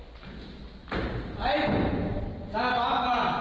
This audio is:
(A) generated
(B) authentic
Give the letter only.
B